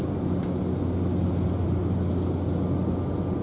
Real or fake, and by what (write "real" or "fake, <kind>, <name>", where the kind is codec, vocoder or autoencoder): real